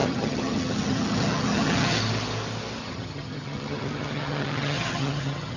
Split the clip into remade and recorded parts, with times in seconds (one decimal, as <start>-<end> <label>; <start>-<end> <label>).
0.0-2.0 remade; 2.0-2.8 recorded; 2.8-5.6 remade

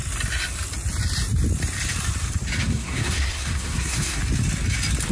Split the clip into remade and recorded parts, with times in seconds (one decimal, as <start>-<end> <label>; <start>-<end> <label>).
0.0-2.6 recorded; 2.6-4.2 remade; 4.2-5.1 recorded